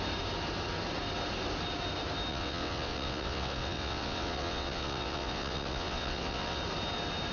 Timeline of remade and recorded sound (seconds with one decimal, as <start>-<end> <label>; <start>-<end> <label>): 0.0-2.3 recorded; 2.3-6.6 remade; 6.6-7.3 recorded